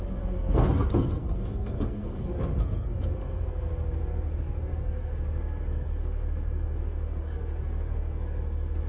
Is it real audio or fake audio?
fake